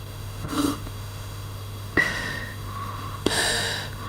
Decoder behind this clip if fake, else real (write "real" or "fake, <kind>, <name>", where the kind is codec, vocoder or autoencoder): fake, autoencoder, DAC-VAE